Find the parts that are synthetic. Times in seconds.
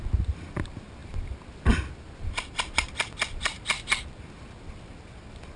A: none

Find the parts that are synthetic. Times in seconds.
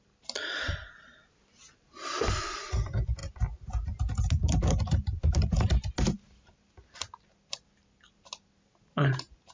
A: none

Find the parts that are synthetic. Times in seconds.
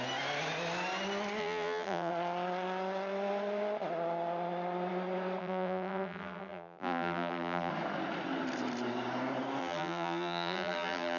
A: 1.4-2.1 (vocoder, BigVGAN v2); 5.4-7.7; 9.6-11.2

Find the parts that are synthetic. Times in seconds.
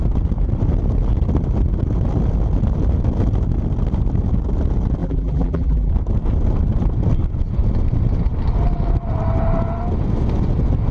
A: 5.0-5.9 (vocoder, BigVGAN v2)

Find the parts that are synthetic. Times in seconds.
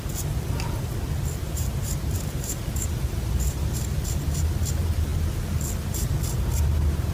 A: 1.4-3.7 (vocoder, BigVGAN v2)